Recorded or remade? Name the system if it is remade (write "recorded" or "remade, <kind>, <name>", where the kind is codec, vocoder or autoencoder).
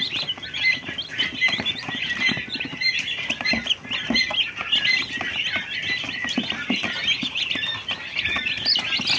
recorded